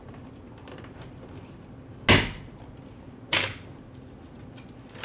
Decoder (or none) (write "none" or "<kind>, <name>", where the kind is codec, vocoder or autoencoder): none